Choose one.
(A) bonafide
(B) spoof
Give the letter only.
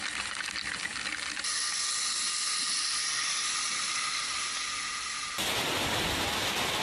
A